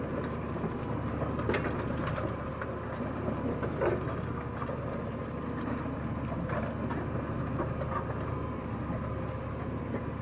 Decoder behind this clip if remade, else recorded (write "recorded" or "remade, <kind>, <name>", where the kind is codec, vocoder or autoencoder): recorded